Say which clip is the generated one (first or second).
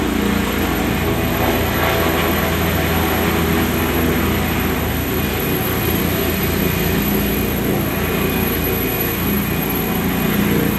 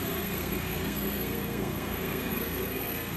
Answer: second